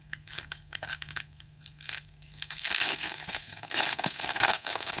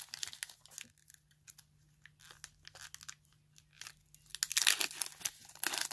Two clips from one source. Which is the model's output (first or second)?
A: first